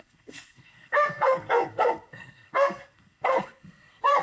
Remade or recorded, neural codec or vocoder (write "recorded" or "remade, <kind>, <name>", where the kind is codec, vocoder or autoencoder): remade, codec, SNAC